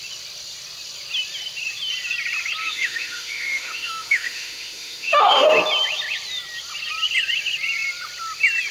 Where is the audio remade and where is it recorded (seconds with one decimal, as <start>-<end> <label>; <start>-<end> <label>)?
0.0-2.6 recorded; 2.6-5.5 remade; 5.5-8.7 recorded